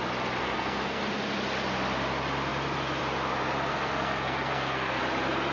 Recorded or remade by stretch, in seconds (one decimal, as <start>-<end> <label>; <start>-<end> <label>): 0.0-0.4 recorded; 0.4-1.0 remade; 1.0-3.7 recorded; 3.7-5.0 remade; 5.0-5.5 recorded